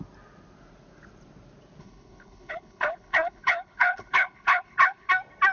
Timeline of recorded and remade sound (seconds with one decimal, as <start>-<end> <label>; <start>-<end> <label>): 0.0-1.8 recorded; 1.8-5.1 remade; 5.1-5.5 recorded

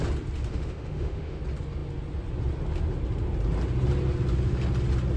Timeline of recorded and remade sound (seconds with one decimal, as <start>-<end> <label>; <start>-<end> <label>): 0.0-0.5 recorded; 0.5-1.4 remade; 1.4-5.2 recorded

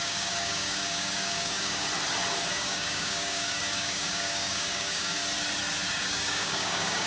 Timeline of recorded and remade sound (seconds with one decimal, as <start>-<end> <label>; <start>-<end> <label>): 0.0-1.9 remade; 1.9-2.5 recorded; 2.5-5.2 remade; 5.2-5.9 recorded; 5.9-7.1 remade